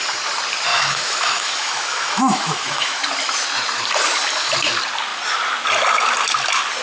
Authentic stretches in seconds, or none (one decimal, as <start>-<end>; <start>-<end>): 0.0-0.7; 3.0-6.8